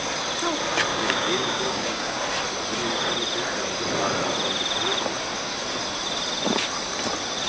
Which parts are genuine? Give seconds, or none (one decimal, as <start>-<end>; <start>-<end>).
0.0-0.9; 2.2-7.5